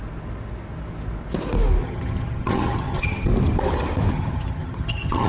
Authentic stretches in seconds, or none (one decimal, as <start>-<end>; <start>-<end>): 0.0-1.8; 3.3-4.1

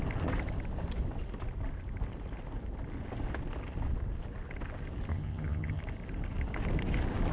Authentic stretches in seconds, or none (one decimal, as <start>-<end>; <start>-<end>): 0.0-5.1; 5.8-7.3

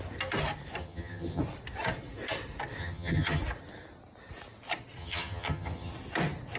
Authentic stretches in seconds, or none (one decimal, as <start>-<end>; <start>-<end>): 0.0-0.8; 1.4-2.8; 3.4-5.0; 5.9-6.6

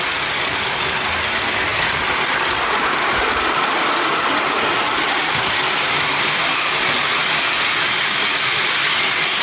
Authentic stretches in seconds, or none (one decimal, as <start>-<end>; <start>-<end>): 0.0-9.4

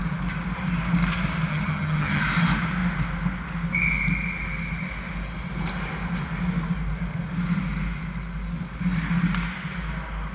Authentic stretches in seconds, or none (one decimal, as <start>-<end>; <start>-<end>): 0.0-1.5; 2.2-10.3

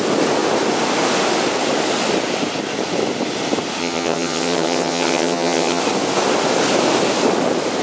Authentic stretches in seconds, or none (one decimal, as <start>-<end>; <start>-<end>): 0.0-3.8; 5.8-7.8

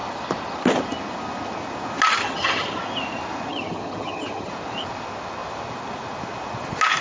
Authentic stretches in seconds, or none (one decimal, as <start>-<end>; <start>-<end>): 0.0-2.2; 2.8-3.5; 4.5-7.0

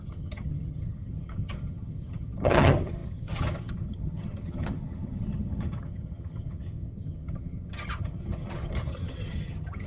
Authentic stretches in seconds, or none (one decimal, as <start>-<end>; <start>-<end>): none